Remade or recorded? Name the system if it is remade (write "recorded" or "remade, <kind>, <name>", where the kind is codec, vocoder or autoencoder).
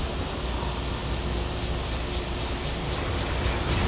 recorded